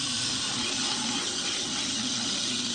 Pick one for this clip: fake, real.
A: real